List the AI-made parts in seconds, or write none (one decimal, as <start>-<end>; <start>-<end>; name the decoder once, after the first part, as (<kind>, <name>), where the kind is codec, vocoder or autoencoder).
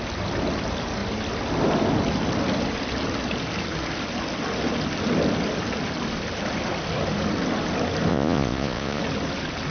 8.1-9.0 (vocoder, Vocos)